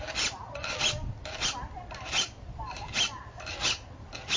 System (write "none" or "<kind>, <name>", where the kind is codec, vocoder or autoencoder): none